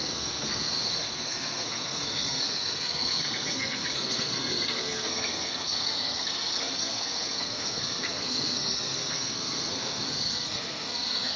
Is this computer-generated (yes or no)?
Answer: yes